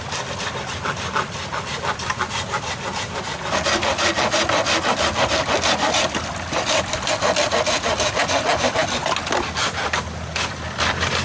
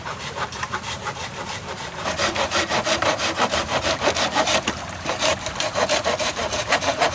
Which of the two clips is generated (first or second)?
second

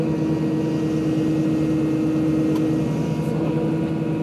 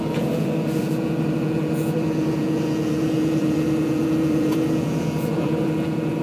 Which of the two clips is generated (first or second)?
second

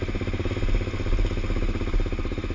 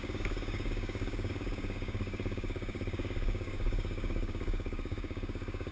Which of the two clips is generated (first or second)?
second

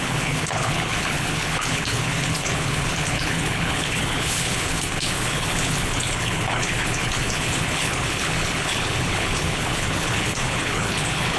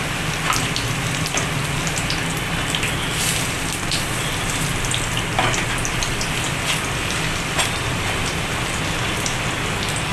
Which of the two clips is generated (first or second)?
first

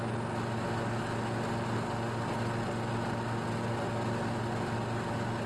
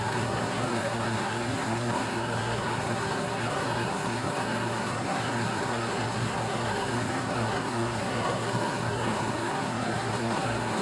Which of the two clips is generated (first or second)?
second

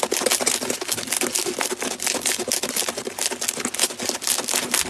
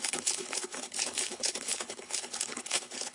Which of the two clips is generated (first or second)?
second